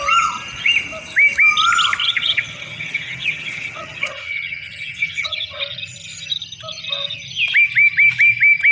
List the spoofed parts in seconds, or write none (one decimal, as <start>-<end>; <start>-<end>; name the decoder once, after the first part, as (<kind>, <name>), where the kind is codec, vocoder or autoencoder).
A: 2.0-5.6 (vocoder, HiFi-GAN)